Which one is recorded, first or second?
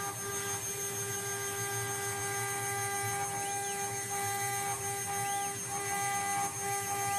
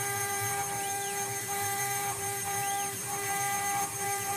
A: first